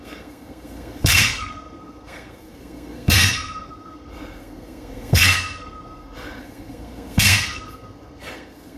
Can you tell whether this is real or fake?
fake